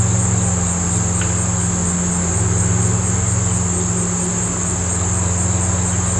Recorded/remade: recorded